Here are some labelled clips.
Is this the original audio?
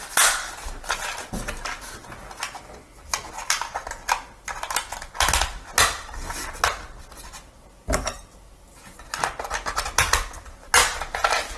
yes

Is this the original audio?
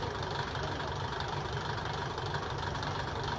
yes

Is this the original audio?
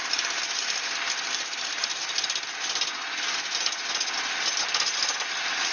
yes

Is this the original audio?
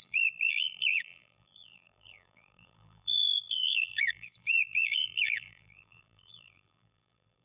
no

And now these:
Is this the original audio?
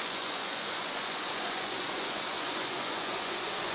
no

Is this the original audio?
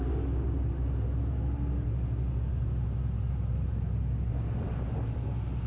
yes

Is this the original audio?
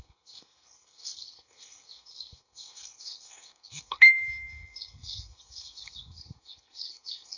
no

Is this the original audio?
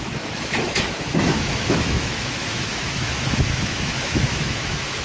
no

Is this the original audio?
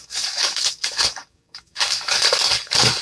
no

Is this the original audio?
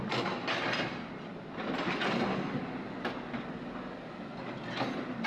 yes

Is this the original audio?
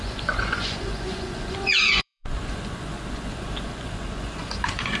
no